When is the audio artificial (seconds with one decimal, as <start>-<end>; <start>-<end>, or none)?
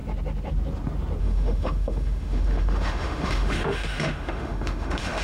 1.2-5.2